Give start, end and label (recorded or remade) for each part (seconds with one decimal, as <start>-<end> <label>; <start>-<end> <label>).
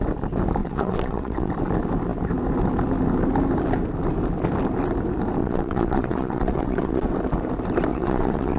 0.0-0.6 recorded; 0.6-1.5 remade; 1.5-5.4 recorded; 5.4-7.1 remade; 7.1-7.9 recorded; 7.9-8.6 remade